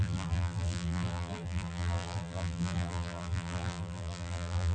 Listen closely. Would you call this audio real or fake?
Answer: fake